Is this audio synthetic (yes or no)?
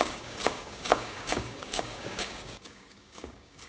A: yes